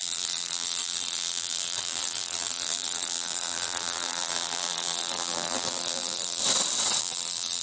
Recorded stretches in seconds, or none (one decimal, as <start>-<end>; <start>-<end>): 6.4-7.0